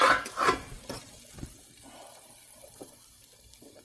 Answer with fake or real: real